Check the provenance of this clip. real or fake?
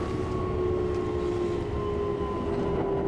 real